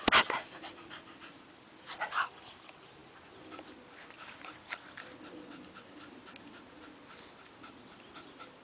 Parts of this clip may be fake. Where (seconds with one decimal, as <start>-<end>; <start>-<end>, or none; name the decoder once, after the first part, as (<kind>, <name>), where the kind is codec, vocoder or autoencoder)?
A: none